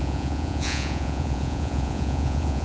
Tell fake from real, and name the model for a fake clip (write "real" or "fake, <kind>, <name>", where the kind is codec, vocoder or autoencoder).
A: fake, vocoder, Vocos